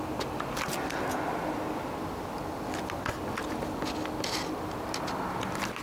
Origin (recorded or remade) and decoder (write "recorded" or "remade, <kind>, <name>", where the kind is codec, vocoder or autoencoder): recorded